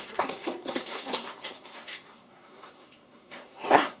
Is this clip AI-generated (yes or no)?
yes